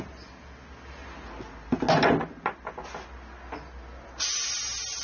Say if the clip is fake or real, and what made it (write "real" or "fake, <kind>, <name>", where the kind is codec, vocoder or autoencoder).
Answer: real